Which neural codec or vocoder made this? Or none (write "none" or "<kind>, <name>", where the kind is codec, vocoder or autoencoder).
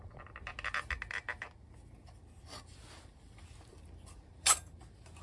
none